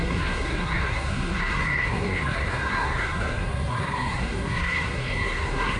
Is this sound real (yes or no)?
no